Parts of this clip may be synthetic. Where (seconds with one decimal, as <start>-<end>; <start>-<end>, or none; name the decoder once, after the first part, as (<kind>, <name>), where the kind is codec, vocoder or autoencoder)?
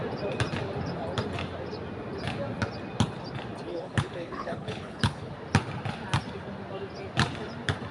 3.7-5.3 (codec, HILCodec)